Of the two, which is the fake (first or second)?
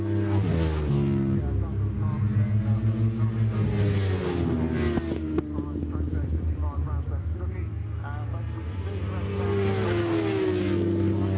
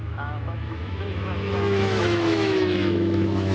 second